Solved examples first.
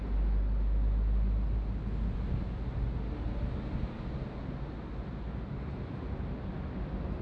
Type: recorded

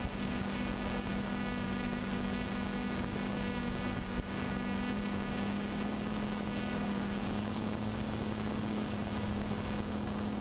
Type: remade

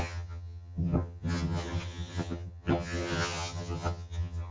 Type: remade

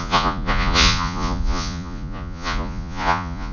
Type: remade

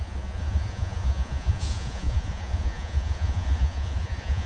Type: remade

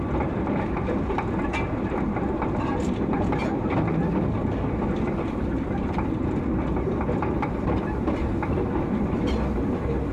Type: recorded